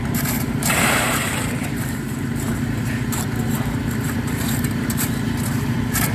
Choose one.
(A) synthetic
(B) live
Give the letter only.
A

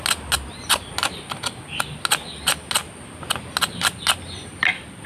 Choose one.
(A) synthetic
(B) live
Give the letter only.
B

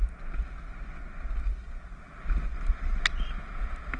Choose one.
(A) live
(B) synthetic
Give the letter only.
A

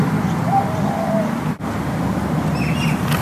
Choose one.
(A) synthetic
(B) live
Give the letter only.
A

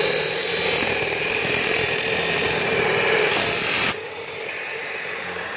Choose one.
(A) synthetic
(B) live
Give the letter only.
A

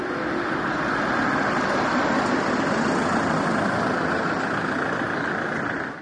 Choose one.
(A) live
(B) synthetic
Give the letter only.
A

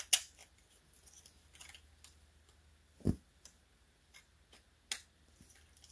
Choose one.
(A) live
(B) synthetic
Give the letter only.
A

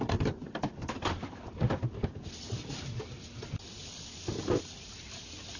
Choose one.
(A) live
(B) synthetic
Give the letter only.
B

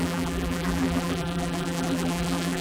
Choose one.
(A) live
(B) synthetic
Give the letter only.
B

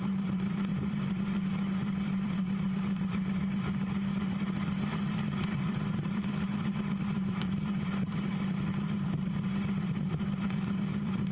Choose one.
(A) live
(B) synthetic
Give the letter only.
B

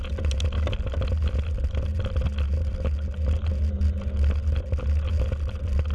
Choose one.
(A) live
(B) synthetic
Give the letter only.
A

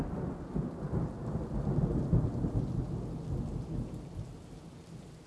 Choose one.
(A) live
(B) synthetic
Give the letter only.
A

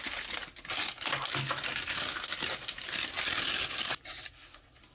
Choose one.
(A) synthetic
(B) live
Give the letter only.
B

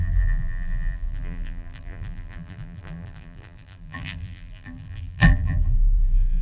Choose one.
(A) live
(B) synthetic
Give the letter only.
B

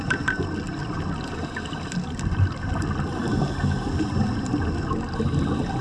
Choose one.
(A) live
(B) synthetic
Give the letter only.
A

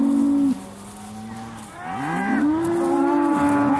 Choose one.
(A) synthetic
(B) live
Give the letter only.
B